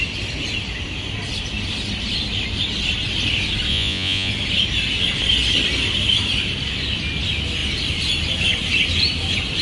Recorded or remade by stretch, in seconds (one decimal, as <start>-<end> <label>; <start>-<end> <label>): 0.0-3.7 recorded; 3.7-4.3 remade; 4.3-9.6 recorded

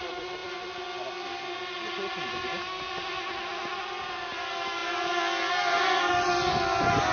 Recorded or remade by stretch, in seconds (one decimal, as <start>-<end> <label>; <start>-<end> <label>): 0.0-7.1 recorded

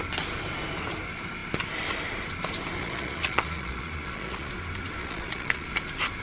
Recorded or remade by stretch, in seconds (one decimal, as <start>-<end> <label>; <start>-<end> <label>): 0.0-2.8 recorded; 2.8-4.5 remade; 4.5-5.0 recorded; 5.0-5.7 remade; 5.7-6.2 recorded

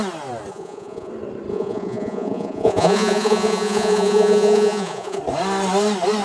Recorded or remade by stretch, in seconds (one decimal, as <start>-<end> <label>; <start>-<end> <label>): 0.0-0.5 recorded; 0.5-1.1 remade; 1.1-1.5 recorded; 1.5-5.2 remade; 5.2-6.2 recorded